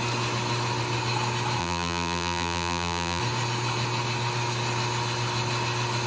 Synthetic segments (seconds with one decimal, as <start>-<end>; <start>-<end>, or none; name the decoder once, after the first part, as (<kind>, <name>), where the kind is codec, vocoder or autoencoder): 1.6-3.2 (vocoder, BigVGAN v2)